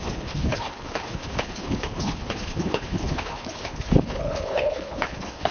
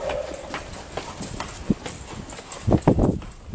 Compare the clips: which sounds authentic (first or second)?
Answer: second